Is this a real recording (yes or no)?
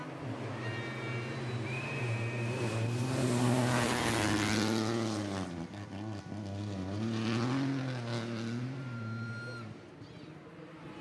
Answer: yes